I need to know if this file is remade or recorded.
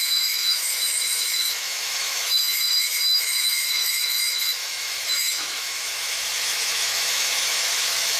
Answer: remade